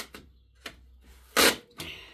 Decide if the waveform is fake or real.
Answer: real